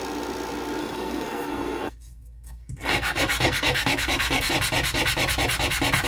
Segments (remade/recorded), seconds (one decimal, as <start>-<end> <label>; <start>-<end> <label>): 0.0-0.8 recorded; 0.8-4.5 remade; 4.5-6.1 recorded